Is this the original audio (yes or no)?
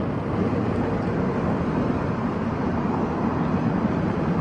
yes